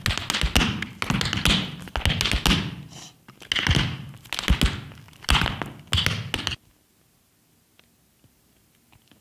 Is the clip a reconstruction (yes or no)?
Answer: no